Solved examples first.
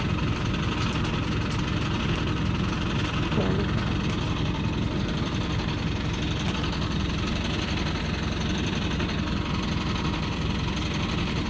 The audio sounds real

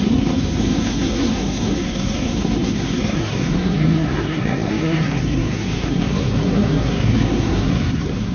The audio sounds fake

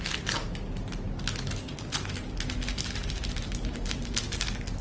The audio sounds real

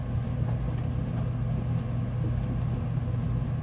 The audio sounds real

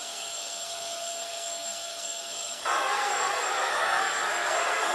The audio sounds fake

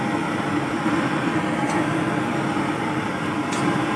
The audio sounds real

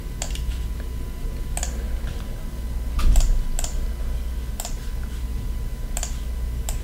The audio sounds real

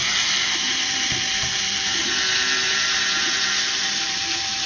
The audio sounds fake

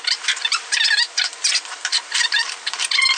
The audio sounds fake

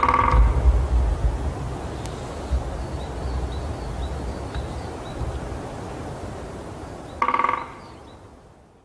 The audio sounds real